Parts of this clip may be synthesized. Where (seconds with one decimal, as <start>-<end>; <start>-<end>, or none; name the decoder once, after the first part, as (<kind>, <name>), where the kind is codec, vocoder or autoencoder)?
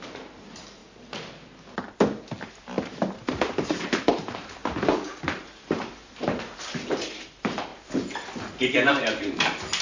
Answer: 0.0-0.8 (vocoder, BigVGAN v2); 4.0-4.6; 5.3-7.7; 8.9-9.8